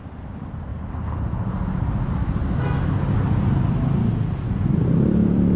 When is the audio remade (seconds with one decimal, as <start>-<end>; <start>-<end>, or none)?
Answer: 0.0-0.7; 4.1-5.6